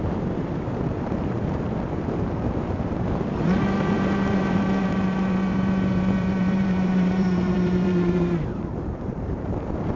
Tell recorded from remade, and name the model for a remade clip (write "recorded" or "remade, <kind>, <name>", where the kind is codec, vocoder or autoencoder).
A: remade, vocoder, BigVGAN v2